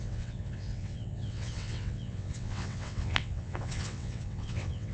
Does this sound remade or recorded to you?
remade